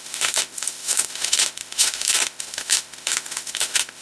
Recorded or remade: remade